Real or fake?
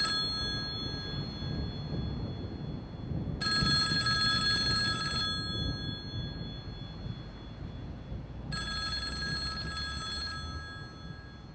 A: real